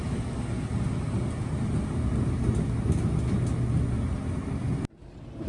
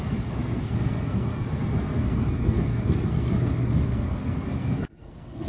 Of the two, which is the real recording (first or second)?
first